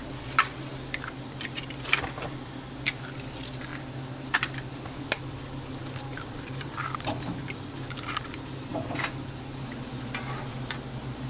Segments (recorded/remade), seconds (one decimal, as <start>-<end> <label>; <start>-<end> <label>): 0.0-6.1 recorded; 6.1-7.4 remade; 7.4-11.3 recorded